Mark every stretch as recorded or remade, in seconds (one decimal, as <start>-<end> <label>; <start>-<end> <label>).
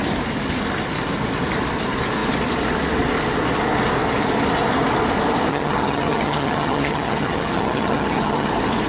0.0-5.5 recorded; 5.5-8.5 remade; 8.5-8.9 recorded